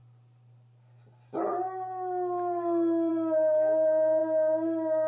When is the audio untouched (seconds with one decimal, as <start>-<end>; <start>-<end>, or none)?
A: 0.0-5.1